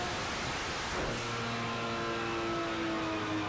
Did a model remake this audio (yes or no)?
no